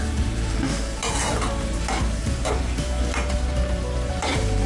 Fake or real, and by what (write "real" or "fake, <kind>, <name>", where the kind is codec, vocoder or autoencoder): fake, vocoder, BigVGAN v2